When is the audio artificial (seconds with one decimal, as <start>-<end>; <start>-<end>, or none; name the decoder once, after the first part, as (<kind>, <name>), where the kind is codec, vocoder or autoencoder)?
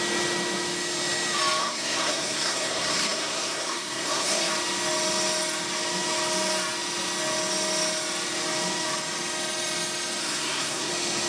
1.6-4.5 (codec, SNAC); 10.2-10.9